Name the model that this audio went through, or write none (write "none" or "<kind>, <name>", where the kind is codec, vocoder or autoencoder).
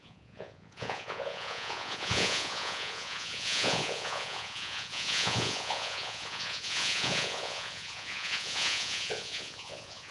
vocoder, Vocos